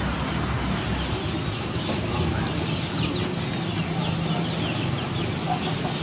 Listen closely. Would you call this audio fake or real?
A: real